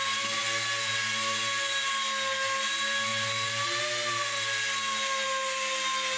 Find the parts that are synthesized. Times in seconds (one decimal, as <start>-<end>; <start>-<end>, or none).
none